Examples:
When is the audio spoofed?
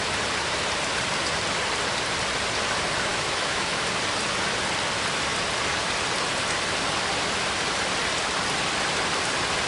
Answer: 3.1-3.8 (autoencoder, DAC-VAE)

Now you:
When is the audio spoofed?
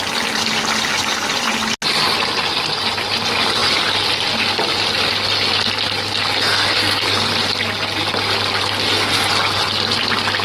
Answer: none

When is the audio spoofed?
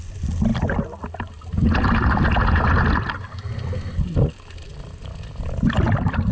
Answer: none